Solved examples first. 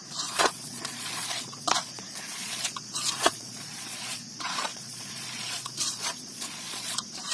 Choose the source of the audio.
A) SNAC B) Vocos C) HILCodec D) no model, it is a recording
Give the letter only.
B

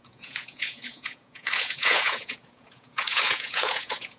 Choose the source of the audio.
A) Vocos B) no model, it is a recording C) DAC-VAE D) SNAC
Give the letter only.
A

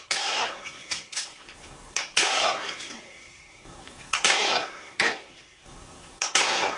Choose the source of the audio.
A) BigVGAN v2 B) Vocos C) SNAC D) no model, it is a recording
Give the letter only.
C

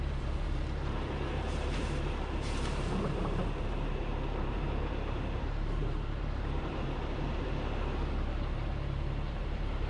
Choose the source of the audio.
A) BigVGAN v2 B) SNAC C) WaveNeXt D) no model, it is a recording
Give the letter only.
A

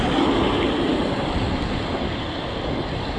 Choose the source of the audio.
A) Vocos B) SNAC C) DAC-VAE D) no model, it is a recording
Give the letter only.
D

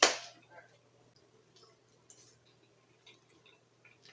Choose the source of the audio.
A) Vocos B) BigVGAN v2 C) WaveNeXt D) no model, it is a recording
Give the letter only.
D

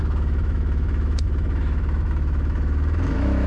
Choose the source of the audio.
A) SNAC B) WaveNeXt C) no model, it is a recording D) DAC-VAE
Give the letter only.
D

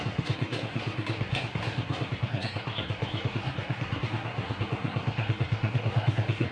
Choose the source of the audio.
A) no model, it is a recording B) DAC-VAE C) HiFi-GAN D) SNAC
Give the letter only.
D